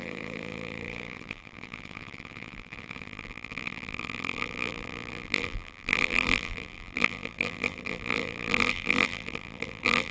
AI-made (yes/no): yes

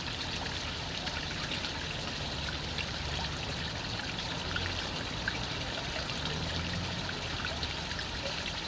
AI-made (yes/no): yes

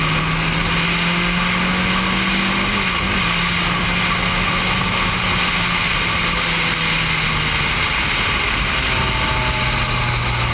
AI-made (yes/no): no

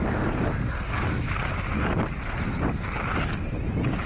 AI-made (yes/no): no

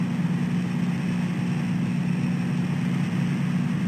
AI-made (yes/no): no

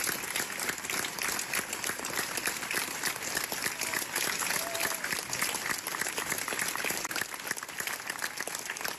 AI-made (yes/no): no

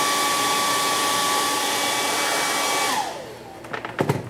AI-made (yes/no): no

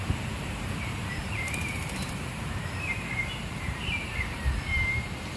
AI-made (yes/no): yes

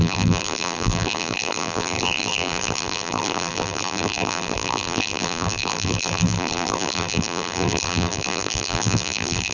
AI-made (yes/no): yes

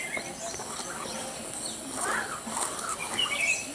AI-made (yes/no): no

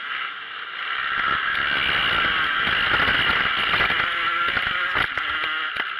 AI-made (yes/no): no